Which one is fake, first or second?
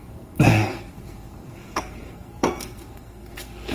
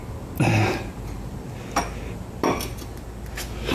first